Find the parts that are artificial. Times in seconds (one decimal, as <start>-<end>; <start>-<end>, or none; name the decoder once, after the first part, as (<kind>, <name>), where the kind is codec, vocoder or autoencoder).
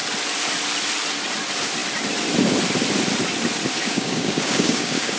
3.8-5.2 (codec, DAC)